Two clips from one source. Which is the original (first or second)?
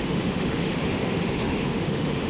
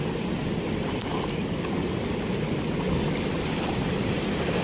second